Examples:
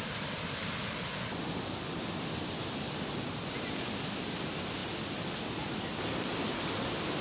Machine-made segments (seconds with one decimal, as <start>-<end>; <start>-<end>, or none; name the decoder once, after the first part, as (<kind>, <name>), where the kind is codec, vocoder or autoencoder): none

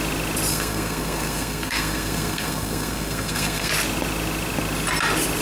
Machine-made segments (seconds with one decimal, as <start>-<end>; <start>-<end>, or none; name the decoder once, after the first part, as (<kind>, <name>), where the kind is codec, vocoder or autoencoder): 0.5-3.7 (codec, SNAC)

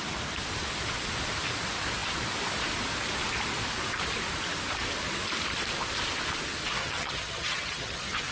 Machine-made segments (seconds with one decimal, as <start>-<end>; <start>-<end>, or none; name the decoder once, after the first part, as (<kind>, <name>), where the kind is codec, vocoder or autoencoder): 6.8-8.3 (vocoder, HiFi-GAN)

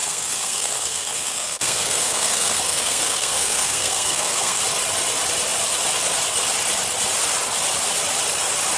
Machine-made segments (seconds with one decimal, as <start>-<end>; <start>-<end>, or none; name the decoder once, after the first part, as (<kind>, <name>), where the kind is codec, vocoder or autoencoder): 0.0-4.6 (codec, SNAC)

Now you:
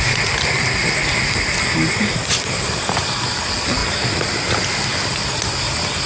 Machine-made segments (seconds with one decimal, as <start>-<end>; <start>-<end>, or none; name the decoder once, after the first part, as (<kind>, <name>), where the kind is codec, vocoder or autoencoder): 0.0-3.8 (vocoder, BigVGAN v2); 4.3-4.9